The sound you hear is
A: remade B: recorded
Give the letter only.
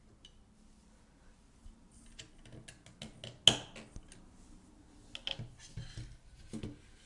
B